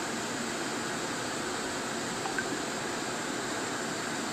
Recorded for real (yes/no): yes